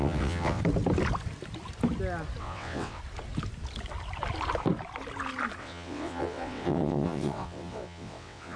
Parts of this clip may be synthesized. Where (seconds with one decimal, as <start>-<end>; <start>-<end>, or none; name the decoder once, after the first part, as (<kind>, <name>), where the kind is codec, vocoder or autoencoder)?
0.0-0.6 (vocoder, WaveNeXt); 2.4-3.0; 5.6-8.6